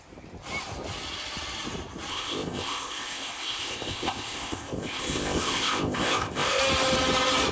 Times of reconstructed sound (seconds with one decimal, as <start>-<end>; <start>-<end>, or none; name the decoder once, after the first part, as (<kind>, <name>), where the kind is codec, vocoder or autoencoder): 2.1-6.6 (codec, ZipCodec)